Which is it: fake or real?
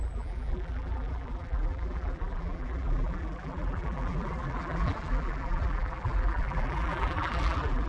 fake